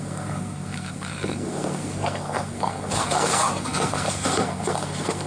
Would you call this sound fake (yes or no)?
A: yes